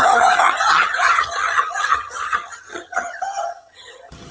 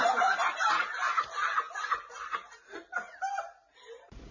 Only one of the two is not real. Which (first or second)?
first